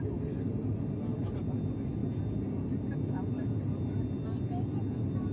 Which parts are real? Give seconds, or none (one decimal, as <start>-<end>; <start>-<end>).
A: 0.0-1.1; 1.6-5.3